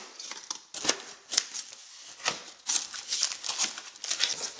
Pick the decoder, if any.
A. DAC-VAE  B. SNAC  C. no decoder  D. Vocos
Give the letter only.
C